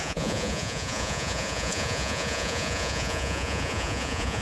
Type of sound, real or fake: fake